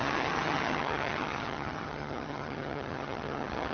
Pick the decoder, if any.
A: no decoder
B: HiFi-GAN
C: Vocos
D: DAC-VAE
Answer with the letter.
B